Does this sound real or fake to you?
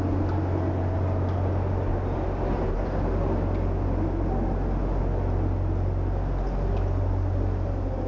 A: real